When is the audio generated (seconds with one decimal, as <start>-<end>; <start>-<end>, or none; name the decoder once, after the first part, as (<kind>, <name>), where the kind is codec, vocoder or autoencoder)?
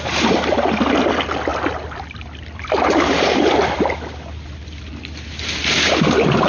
none